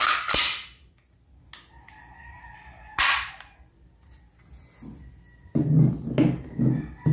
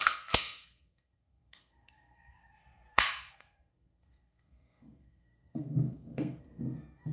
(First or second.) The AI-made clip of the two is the second